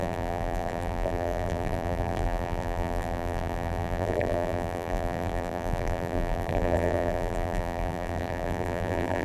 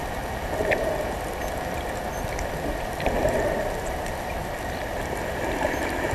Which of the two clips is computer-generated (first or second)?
first